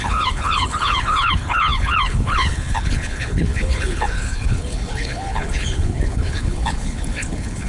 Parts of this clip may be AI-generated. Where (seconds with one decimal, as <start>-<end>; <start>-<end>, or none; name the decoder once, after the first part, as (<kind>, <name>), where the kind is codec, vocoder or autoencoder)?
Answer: 0.0-7.7 (codec, HILCodec)